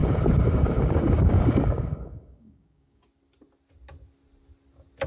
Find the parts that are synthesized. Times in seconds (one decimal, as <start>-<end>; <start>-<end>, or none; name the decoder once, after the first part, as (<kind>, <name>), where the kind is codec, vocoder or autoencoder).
0.0-3.1 (codec, DAC)